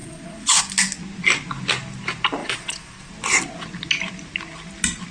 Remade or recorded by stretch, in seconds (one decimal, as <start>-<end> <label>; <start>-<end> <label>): 0.0-0.6 remade; 0.6-2.4 recorded; 2.4-3.1 remade; 3.1-5.1 recorded